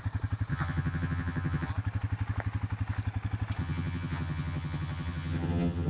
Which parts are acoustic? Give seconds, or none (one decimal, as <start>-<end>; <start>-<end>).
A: 0.0-0.5; 1.7-3.6